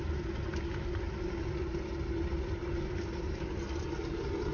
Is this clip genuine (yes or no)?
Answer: yes